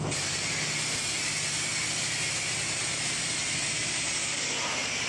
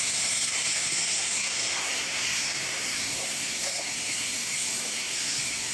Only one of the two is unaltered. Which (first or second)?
first